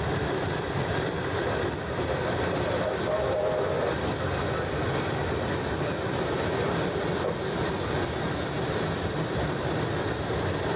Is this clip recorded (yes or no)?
yes